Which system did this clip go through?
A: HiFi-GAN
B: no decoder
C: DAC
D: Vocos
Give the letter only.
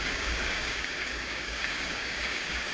C